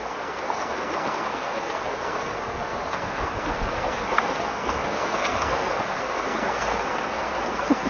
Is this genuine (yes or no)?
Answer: no